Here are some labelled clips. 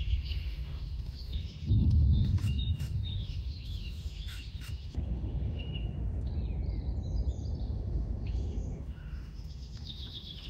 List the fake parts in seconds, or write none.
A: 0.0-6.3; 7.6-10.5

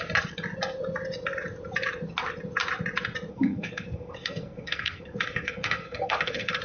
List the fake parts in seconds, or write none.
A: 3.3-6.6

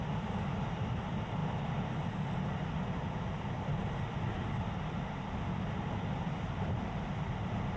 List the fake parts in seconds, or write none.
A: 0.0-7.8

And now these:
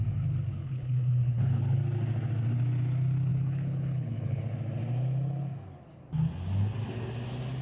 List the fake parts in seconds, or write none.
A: 0.5-1.8; 3.3-4.4

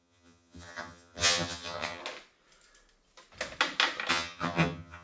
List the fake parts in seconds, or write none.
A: 0.0-2.0; 4.1-5.0